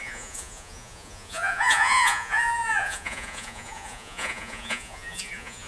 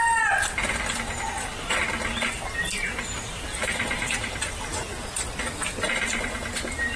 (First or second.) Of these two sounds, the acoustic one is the second